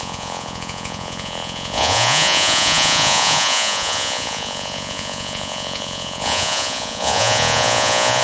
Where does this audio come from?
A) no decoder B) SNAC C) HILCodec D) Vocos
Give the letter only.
D